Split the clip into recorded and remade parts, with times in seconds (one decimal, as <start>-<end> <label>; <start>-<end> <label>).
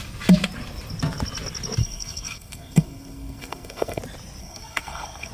0.0-1.8 recorded; 1.8-4.0 remade; 4.0-4.4 recorded; 4.4-5.3 remade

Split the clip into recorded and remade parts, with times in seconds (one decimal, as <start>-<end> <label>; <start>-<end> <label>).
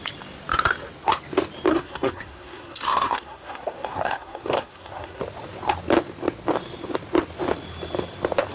0.0-1.7 recorded; 1.7-5.2 remade; 5.2-8.5 recorded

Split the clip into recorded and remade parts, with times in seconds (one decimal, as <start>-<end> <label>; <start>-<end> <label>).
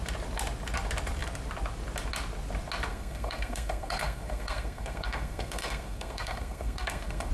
0.0-2.9 recorded; 2.9-7.3 remade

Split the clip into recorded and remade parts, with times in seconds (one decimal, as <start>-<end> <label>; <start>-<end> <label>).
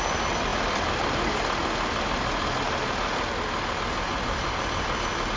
0.0-5.4 recorded